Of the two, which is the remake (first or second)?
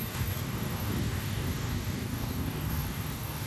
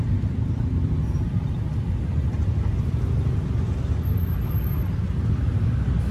first